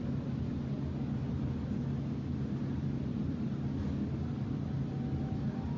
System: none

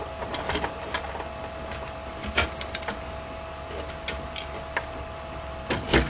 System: none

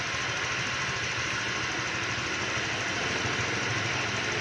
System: none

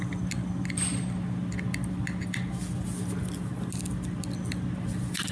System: none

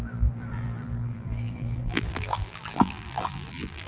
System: vocoder, BigVGAN v2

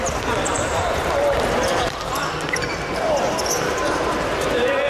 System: none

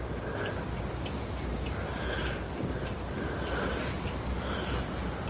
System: none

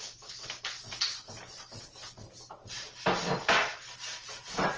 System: none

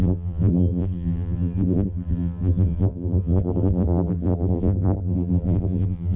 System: vocoder, BigVGAN v2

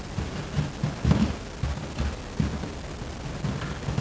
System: none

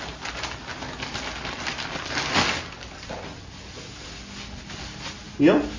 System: none